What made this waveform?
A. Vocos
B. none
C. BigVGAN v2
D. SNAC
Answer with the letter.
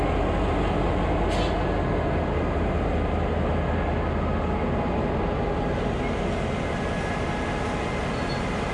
B